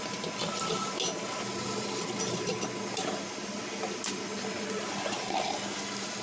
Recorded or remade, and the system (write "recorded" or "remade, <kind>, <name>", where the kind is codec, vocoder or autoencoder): recorded